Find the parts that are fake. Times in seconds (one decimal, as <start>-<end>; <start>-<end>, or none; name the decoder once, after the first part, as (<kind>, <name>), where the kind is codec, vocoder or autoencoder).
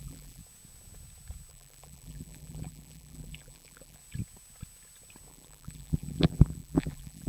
0.0-0.4 (vocoder, BigVGAN v2); 1.5-4.0; 5.3-7.3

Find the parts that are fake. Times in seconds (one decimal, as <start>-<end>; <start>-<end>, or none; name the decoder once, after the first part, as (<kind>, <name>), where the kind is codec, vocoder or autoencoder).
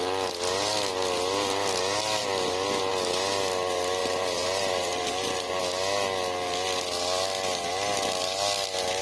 4.0-5.6 (vocoder, BigVGAN v2)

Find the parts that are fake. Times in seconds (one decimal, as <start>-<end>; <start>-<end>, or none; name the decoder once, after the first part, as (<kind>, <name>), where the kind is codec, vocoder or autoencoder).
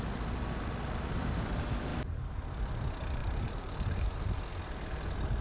3.2-4.4 (vocoder, BigVGAN v2)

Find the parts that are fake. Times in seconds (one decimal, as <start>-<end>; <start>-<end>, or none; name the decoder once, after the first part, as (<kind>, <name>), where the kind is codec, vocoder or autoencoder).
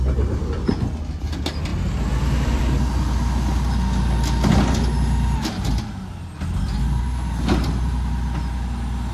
none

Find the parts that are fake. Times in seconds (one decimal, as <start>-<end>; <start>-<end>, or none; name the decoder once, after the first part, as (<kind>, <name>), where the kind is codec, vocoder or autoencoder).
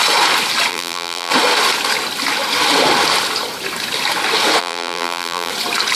0.7-1.3 (vocoder, BigVGAN v2); 4.6-5.5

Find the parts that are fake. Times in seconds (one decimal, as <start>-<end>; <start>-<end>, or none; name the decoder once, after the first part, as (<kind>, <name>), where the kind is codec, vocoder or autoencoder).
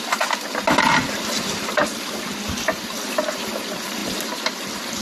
4.0-4.6 (vocoder, BigVGAN v2)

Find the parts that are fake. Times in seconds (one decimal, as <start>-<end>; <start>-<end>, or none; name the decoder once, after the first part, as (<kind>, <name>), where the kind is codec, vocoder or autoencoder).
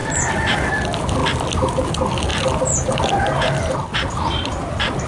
0.0-0.7 (vocoder, BigVGAN v2); 1.2-1.9